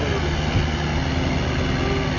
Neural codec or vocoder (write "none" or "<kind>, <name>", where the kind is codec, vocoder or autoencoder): none